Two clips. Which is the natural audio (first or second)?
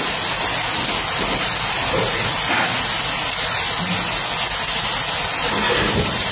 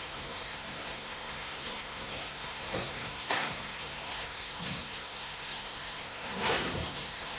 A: first